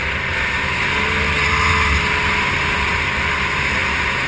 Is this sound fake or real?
real